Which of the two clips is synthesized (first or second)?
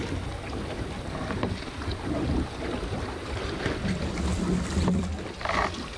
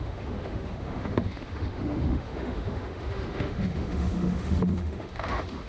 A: second